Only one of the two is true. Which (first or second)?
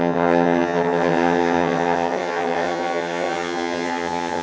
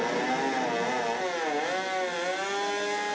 second